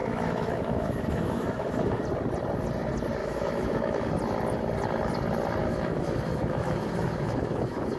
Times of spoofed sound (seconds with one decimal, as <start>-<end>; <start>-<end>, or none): 0.0-2.0; 3.2-4.1; 5.6-8.0